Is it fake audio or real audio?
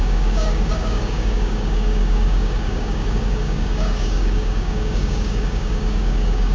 fake